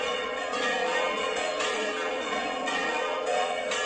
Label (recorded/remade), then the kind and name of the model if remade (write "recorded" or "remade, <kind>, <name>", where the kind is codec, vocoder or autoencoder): remade, vocoder, Vocos